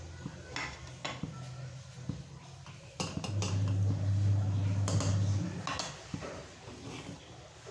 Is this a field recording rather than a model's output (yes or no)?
yes